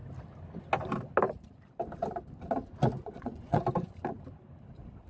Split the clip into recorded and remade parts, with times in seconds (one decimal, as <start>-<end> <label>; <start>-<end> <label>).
0.0-2.9 recorded; 2.9-3.6 remade; 3.6-5.1 recorded